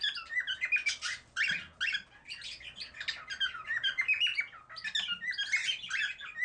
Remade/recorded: recorded